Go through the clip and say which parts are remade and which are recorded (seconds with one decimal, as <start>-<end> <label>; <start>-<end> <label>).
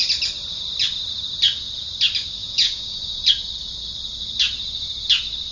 0.0-2.4 recorded; 2.4-3.3 remade; 3.3-5.5 recorded